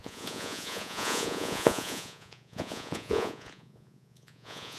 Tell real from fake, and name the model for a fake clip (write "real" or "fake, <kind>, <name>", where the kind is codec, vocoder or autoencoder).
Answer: fake, vocoder, Vocos